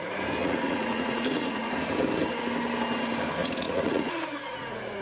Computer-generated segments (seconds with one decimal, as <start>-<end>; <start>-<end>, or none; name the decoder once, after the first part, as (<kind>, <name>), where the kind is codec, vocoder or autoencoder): 0.4-1.8 (vocoder, Vocos); 3.4-5.0